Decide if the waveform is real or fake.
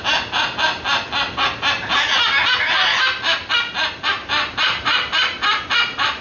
real